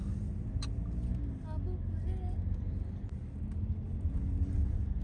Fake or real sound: real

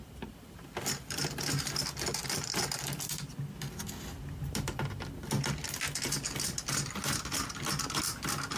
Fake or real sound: real